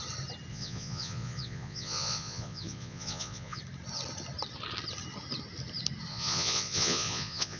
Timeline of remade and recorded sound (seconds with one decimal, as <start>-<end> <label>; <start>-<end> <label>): 0.0-0.5 recorded; 0.5-3.6 remade; 3.6-6.1 recorded; 6.1-7.6 remade